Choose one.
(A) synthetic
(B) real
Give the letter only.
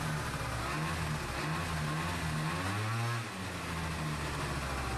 B